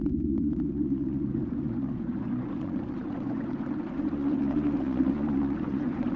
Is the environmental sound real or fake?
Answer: fake